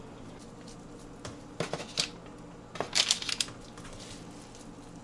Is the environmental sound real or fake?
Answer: real